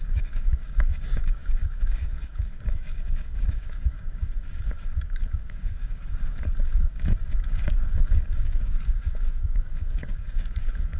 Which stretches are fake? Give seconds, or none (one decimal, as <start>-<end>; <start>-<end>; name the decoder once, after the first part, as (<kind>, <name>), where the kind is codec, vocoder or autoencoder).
0.0-6.0 (codec, DAC); 6.6-11.0